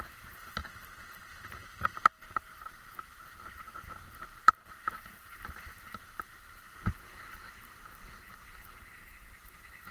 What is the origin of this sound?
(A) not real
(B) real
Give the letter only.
A